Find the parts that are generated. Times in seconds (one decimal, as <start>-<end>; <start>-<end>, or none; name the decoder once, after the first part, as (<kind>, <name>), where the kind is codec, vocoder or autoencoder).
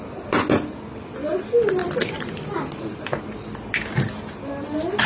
none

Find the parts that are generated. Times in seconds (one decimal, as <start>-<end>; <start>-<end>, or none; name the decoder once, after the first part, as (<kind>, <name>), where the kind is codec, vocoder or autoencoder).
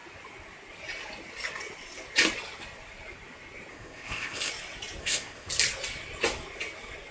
3.7-4.5 (codec, ZipCodec); 5.0-5.5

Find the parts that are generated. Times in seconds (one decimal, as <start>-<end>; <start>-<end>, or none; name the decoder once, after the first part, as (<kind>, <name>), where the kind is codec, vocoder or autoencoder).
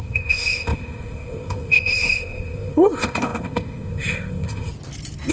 0.0-4.7 (codec, ZipCodec)